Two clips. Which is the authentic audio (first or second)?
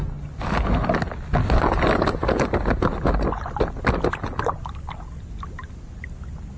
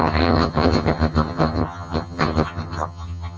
first